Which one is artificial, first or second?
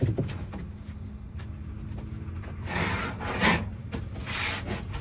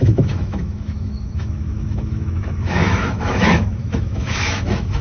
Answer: second